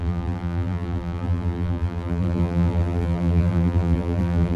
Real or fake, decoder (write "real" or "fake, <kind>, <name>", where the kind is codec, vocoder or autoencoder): fake, vocoder, BigVGAN v2